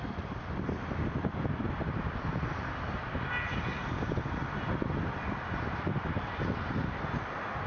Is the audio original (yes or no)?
yes